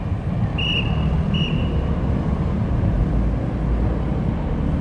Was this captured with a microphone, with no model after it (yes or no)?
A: yes